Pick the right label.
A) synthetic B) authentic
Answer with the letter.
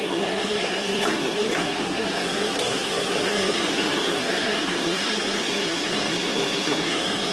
A